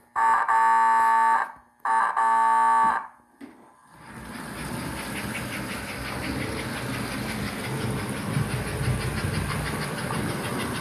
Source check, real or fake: real